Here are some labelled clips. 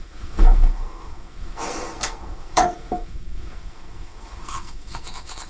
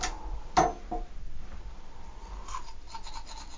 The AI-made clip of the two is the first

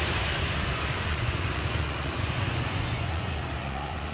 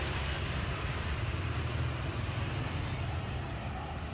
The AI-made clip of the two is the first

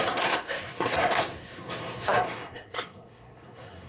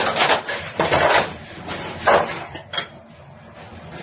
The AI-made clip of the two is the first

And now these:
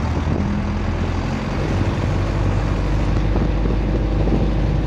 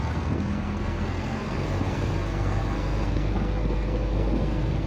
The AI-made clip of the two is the second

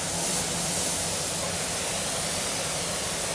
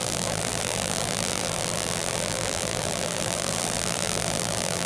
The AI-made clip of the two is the second